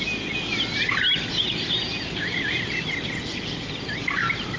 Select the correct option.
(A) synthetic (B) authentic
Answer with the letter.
B